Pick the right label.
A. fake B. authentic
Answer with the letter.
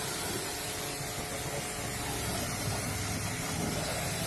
B